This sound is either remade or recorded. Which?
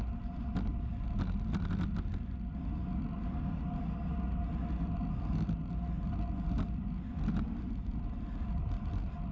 recorded